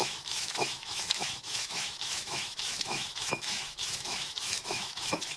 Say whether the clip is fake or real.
fake